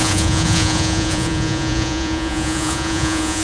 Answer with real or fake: fake